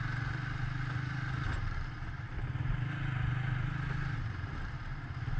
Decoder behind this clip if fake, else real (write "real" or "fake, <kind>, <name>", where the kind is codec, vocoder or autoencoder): real